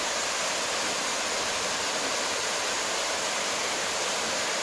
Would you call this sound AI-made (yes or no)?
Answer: no